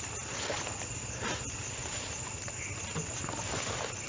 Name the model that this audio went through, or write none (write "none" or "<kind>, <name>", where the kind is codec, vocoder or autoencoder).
none